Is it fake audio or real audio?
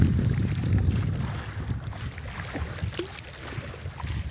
real